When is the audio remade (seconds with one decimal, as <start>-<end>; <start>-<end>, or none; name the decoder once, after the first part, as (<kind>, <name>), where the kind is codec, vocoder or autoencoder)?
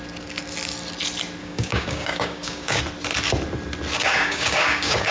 1.4-2.8 (codec, DAC); 4.0-5.1